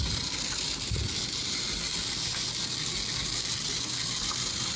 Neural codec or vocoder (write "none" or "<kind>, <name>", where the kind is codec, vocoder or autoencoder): none